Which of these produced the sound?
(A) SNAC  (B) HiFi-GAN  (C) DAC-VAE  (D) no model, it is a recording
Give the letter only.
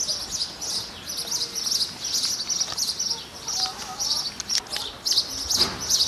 D